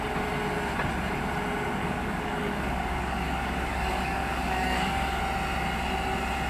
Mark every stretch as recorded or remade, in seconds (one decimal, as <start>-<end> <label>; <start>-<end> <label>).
0.0-1.8 recorded; 1.8-5.2 remade; 5.2-6.5 recorded